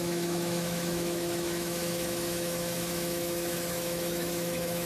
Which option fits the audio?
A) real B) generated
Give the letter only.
B